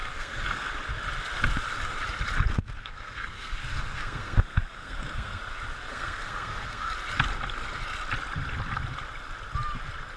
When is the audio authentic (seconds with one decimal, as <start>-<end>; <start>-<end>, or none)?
0.7-2.5; 5.4-5.9; 6.9-10.2

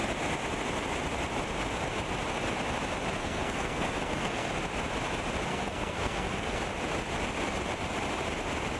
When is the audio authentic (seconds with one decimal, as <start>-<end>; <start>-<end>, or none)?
0.0-3.2; 4.5-5.5; 6.6-8.8

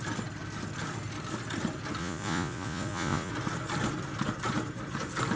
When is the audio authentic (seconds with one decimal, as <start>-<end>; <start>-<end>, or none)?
0.0-2.0; 3.3-5.4

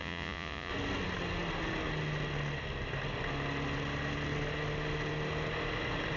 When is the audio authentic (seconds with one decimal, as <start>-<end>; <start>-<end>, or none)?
0.7-6.2

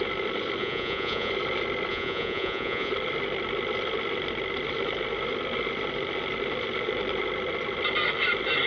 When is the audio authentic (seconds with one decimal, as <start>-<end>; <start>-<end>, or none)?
0.0-0.6; 1.3-1.9; 2.9-8.7

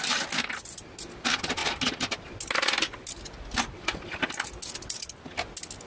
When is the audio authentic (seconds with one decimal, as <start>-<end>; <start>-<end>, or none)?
0.0-5.9

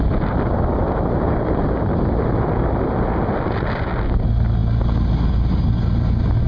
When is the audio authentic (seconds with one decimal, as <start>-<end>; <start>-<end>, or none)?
0.0-6.5

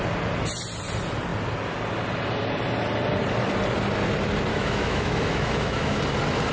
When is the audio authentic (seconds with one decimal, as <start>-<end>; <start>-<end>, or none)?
0.0-4.5; 6.0-6.5